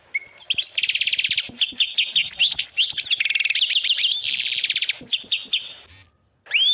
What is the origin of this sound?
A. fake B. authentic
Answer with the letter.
B